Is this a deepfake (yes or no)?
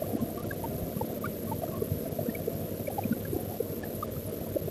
no